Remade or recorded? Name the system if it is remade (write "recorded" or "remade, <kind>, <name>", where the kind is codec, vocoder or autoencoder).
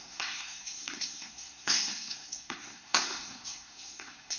remade, codec, SNAC